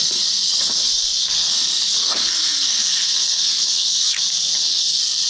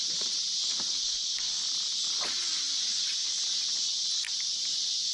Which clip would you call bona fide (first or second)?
second